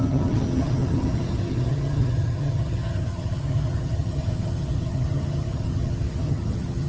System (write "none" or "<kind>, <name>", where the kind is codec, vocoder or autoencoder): vocoder, HiFi-GAN